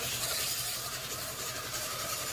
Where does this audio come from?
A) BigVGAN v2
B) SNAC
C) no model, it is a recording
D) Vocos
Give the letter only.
A